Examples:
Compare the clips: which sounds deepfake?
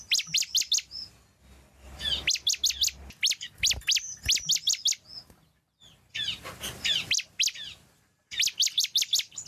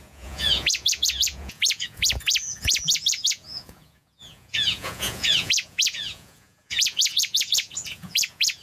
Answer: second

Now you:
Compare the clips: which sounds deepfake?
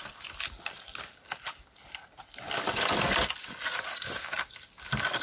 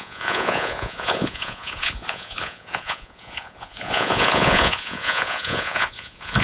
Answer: second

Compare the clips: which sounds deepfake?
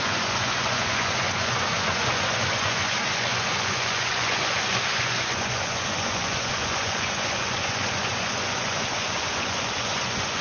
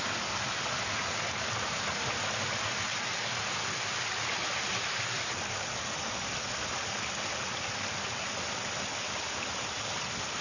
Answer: first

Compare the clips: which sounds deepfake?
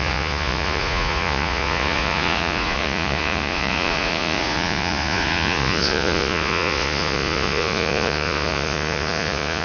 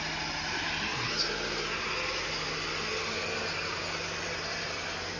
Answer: first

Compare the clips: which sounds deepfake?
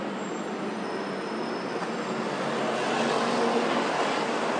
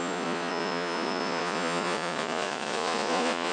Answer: second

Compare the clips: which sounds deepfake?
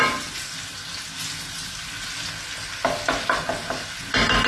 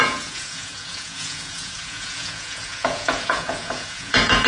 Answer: second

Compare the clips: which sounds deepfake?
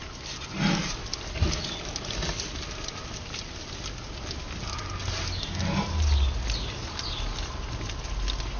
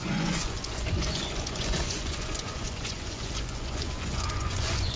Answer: second